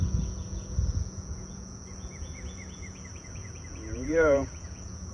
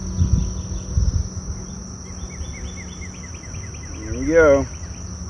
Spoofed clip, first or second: first